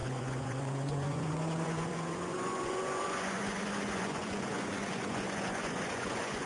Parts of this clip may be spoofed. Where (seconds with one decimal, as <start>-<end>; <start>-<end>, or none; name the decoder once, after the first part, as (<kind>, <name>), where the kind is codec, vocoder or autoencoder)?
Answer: 0.0-6.5 (vocoder, Vocos)